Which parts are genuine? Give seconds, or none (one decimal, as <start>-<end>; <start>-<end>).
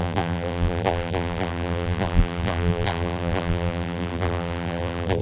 none